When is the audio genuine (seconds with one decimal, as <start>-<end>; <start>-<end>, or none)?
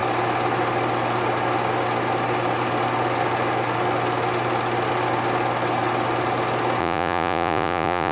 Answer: 0.0-6.8